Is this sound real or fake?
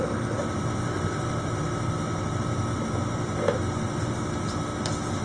real